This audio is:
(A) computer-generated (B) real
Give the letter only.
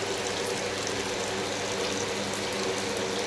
B